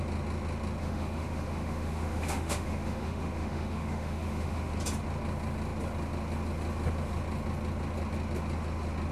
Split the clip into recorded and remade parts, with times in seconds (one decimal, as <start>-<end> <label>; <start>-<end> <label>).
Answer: 0.0-0.8 recorded; 0.8-4.7 remade; 4.7-9.1 recorded